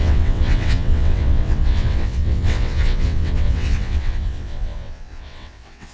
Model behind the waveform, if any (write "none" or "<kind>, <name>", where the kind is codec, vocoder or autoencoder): vocoder, WaveNeXt